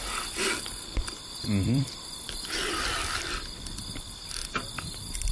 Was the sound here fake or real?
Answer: fake